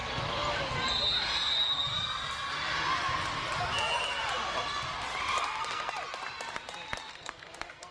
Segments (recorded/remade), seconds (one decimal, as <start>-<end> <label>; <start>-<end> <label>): 0.0-5.4 recorded; 5.4-5.9 remade; 5.9-7.1 recorded; 7.1-7.9 remade